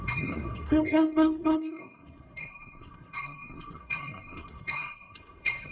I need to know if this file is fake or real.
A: fake